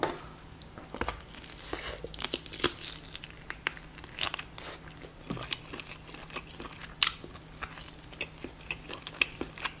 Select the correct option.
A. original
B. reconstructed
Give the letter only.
A